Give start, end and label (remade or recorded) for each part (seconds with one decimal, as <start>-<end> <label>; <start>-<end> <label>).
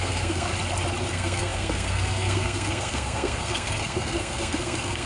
0.0-0.5 remade; 0.5-1.1 recorded; 1.1-5.1 remade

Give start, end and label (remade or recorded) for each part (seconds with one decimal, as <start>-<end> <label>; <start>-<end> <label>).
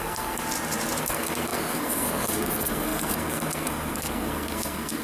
0.0-0.4 remade; 0.4-1.0 recorded; 1.0-5.0 remade